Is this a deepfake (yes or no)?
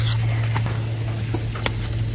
no